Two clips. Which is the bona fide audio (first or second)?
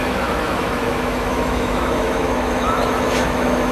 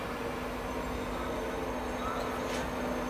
second